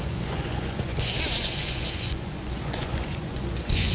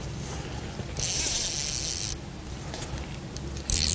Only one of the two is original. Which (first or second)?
second